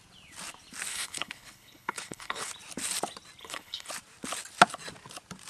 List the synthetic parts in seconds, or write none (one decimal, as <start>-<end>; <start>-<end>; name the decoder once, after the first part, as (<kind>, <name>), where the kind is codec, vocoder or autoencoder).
0.9-2.5 (codec, HILCodec); 3.4-3.9